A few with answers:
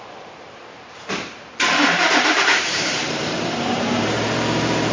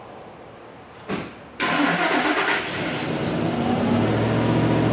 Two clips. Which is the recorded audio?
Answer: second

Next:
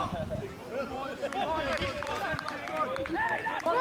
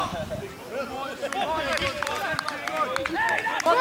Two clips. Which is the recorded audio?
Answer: second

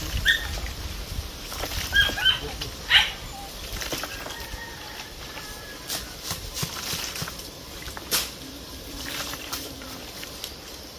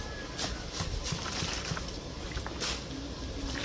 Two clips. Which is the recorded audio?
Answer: second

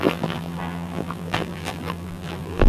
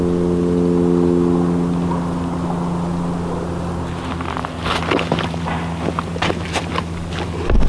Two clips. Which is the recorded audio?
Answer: second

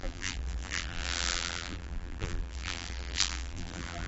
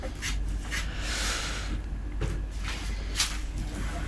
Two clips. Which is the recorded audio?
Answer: second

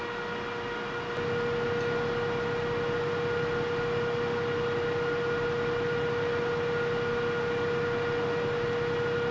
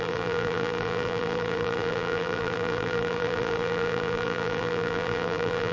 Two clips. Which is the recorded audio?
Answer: first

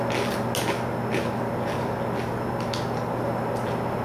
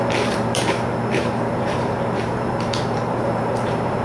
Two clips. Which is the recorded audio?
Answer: first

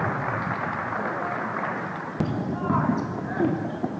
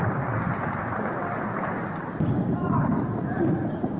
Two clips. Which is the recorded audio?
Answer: first